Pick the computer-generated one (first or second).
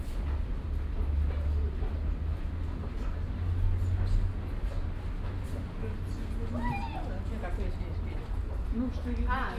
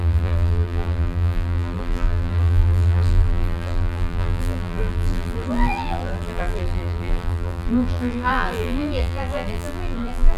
second